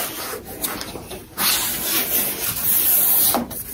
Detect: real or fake real